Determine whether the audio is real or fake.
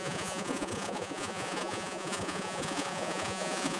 fake